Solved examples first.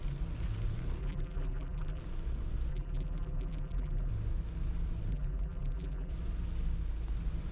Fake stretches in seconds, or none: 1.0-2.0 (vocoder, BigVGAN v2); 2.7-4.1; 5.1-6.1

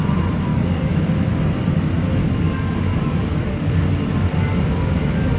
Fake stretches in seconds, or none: 0.5-1.1 (codec, DAC); 2.2-3.9

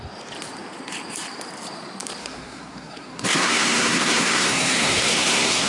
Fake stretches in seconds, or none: 2.2-5.7 (codec, SNAC)

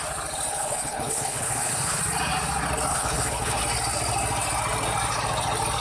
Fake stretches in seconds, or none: 0.5-2.0 (codec, HILCodec); 2.9-3.6

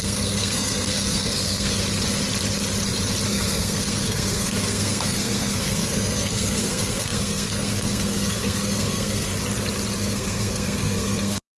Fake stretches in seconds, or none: 0.0-1.8 (codec, SNAC); 3.3-9.3; 10.0-11.6